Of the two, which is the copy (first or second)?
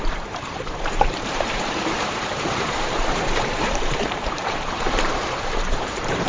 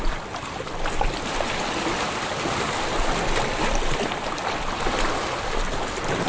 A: first